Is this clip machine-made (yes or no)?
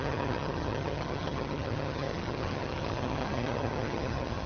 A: yes